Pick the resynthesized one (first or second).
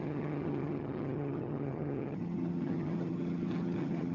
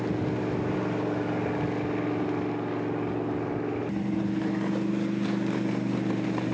first